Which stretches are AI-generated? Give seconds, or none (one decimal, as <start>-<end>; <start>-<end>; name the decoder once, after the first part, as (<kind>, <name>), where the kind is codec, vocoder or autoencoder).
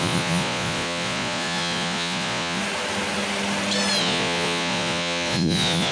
0.0-2.6 (vocoder, Vocos); 4.0-5.9